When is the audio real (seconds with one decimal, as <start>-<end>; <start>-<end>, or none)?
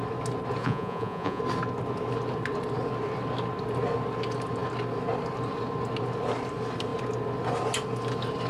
0.0-0.6; 1.4-8.5